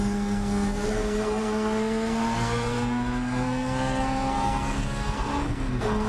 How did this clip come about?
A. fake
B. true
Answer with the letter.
A